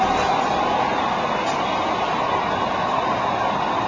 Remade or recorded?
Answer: recorded